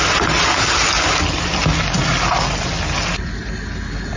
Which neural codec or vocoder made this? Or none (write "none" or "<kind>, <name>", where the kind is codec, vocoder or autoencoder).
none